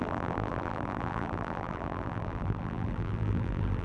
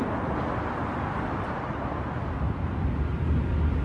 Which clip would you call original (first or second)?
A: second